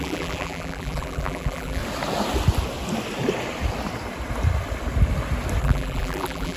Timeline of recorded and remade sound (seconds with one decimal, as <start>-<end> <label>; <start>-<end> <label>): 0.0-1.8 remade; 1.8-5.6 recorded; 5.6-6.6 remade